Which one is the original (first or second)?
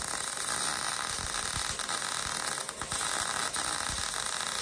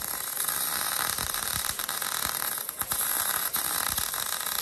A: first